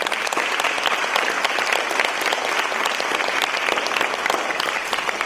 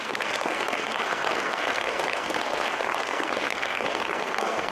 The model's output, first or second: second